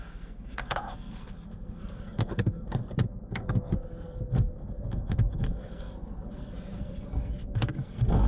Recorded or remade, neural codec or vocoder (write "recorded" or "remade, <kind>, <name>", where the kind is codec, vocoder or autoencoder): remade, codec, SNAC